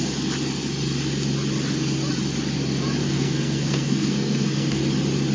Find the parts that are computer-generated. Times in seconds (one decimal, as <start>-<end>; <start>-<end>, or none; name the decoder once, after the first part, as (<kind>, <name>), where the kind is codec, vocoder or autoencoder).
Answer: 3.0-4.8 (codec, SNAC)